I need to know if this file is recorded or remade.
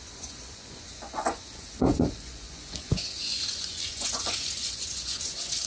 remade